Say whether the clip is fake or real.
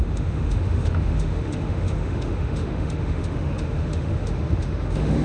fake